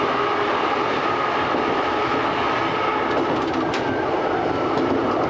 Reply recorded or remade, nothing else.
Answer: recorded